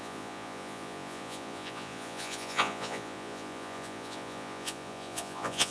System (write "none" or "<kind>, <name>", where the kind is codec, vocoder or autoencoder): vocoder, Vocos